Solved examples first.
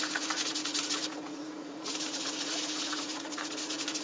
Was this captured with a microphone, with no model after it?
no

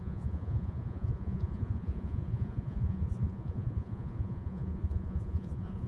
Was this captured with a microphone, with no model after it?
no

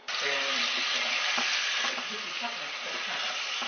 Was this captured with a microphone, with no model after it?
yes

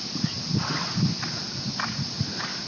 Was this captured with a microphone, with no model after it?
yes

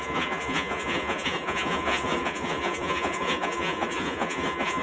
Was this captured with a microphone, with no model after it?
no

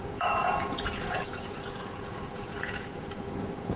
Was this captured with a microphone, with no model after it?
no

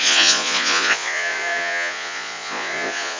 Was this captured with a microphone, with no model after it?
no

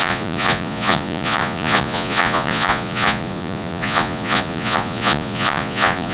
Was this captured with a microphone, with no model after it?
no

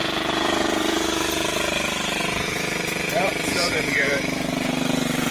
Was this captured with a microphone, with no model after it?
no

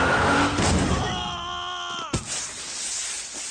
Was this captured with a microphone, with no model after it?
yes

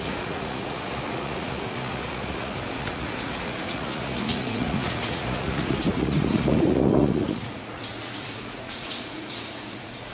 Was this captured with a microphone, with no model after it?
no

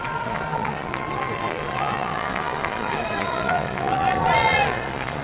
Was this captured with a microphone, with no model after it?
no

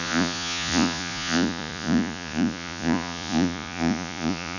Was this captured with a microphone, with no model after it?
no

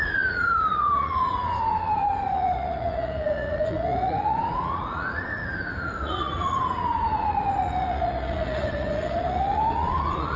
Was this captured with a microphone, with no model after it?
no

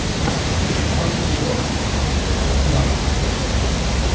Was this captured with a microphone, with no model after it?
yes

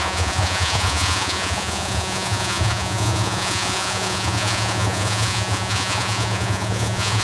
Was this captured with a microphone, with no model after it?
no